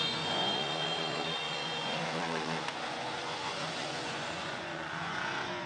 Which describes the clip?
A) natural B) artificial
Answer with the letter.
B